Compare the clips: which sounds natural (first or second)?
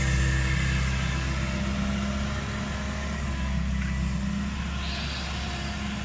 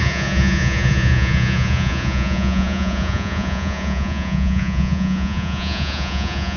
first